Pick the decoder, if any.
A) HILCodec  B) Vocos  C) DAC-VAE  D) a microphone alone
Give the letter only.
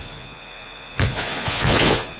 B